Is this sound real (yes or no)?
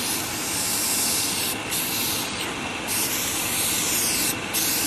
yes